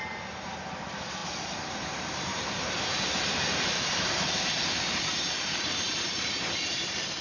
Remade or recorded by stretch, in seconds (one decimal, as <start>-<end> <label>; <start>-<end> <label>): 0.0-7.2 remade